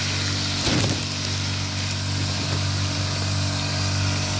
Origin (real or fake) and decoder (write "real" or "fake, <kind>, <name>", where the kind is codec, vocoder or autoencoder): real